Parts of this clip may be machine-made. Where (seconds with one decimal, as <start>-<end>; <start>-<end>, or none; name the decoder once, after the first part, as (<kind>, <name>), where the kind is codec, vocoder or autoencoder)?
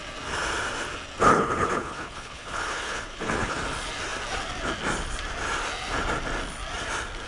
1.3-3.6 (codec, HILCodec)